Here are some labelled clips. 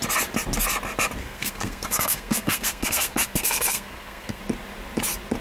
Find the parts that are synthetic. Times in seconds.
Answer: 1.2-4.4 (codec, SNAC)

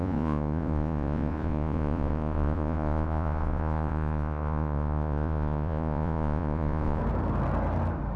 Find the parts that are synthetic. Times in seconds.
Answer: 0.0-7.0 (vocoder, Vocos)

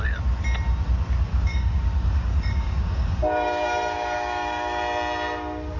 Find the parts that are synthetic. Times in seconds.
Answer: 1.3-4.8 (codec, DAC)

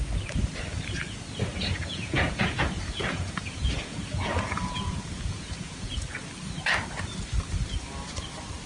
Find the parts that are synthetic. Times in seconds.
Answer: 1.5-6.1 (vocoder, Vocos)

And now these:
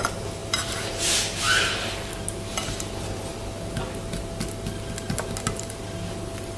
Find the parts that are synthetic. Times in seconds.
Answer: 0.4-1.6 (vocoder, BigVGAN v2)

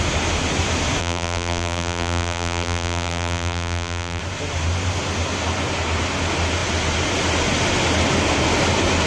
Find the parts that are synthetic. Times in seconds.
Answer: 1.0-4.2 (vocoder, BigVGAN v2)